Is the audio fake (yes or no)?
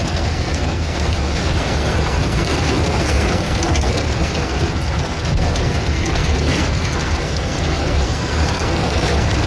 yes